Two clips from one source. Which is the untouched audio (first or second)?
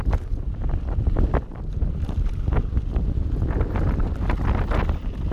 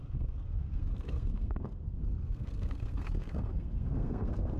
first